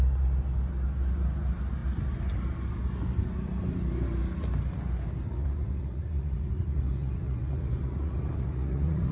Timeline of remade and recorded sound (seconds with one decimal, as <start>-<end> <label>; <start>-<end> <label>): 0.0-5.3 recorded; 5.3-9.1 remade